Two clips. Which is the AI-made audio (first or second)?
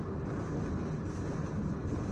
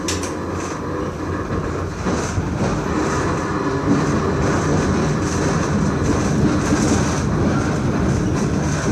first